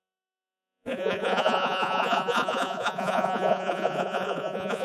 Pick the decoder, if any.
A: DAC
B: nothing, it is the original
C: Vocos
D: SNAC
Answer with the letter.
C